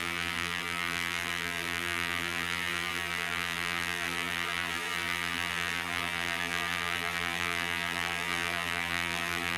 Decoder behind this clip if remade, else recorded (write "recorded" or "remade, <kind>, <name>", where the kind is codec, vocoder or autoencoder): remade, vocoder, BigVGAN v2